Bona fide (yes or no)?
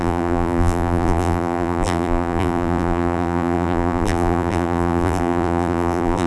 no